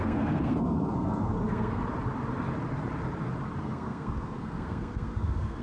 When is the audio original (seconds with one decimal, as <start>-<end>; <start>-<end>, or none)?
1.8-3.6